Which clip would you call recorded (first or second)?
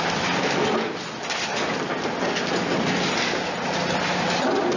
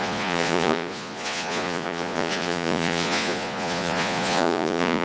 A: first